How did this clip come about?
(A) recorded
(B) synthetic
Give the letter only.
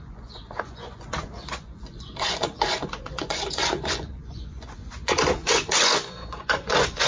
B